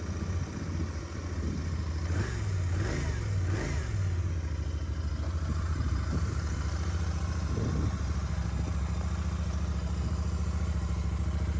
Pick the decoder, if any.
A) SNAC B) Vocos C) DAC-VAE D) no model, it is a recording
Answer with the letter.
D